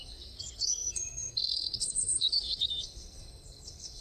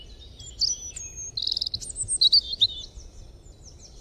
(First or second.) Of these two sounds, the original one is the second